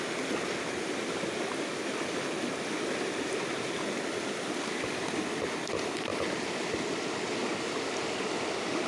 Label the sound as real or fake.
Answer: real